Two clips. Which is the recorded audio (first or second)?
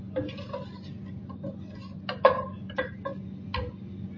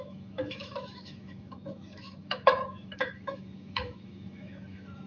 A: first